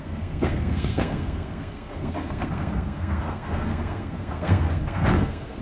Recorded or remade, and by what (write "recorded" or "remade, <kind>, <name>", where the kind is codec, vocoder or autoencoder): remade, codec, SNAC